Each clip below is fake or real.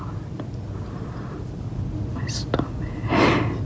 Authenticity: real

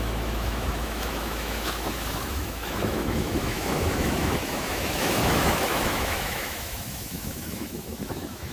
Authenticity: fake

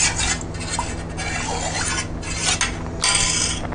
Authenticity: real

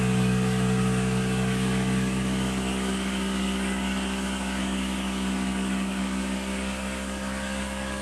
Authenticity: fake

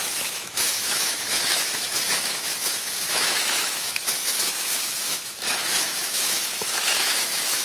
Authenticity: fake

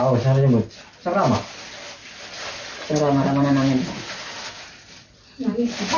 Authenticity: real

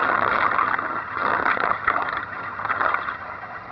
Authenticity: fake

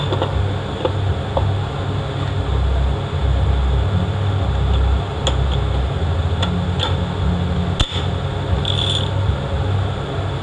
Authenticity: real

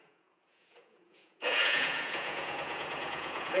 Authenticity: fake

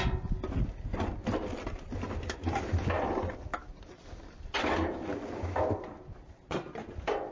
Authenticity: real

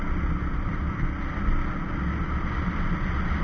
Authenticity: real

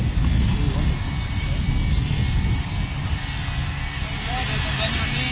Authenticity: real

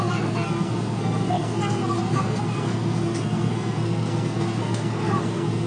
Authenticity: fake